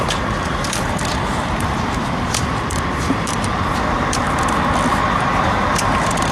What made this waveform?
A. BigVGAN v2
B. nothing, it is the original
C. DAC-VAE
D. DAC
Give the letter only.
A